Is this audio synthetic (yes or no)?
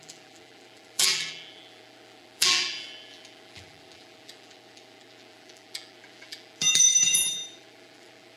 yes